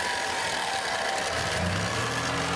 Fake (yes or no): no